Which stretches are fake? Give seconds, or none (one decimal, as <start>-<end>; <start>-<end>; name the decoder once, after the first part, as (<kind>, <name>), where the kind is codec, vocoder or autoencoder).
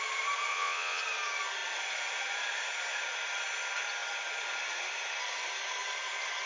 0.5-1.0 (vocoder, Vocos)